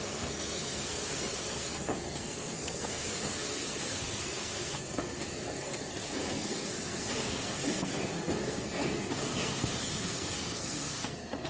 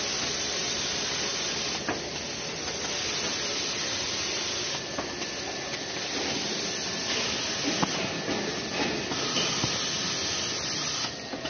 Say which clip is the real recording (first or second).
second